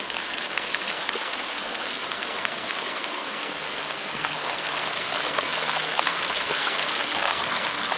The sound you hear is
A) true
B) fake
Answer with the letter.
B